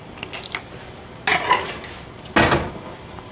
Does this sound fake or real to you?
real